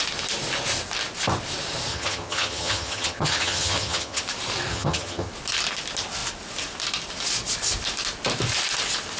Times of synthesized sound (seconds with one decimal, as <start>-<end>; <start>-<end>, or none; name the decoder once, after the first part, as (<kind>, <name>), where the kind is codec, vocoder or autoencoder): 1.9-4.2 (vocoder, HiFi-GAN); 4.7-5.3